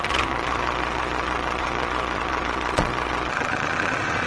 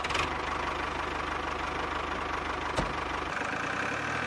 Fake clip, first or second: first